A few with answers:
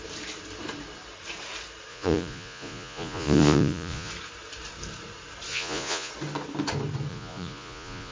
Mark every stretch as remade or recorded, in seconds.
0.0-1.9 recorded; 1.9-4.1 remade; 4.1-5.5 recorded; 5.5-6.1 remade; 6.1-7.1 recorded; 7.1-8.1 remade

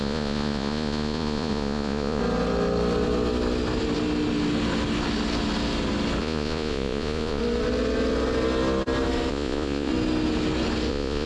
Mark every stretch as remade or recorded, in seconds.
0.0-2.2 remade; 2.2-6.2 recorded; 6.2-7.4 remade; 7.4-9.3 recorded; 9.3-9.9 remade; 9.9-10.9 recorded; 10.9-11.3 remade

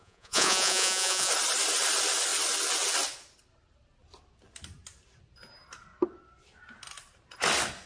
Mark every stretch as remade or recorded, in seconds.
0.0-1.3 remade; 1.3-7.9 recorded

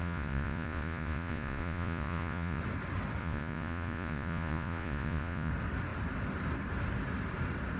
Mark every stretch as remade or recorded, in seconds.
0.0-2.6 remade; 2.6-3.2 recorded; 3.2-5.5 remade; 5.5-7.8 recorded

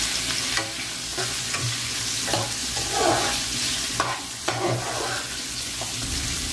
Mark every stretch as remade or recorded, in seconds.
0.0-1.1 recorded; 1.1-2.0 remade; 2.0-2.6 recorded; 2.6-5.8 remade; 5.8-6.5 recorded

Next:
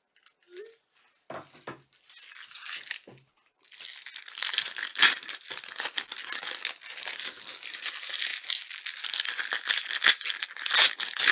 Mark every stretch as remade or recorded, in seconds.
0.0-11.3 recorded

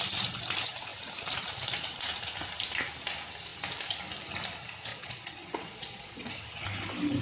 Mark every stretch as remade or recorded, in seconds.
0.0-4.9 recorded; 4.9-6.3 remade; 6.3-7.2 recorded

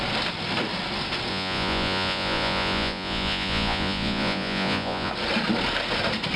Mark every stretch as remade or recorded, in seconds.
0.0-1.3 recorded; 1.3-5.1 remade; 5.1-6.4 recorded